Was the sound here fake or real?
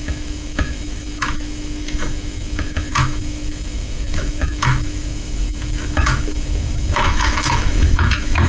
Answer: fake